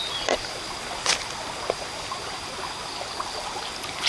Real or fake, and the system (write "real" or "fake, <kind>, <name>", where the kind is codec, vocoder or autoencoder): real